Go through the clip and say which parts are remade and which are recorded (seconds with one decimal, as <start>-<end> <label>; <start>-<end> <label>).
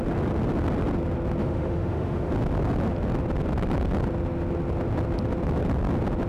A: 0.0-1.4 recorded; 1.4-2.3 remade; 2.3-6.3 recorded